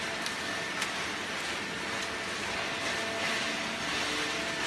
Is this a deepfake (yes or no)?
no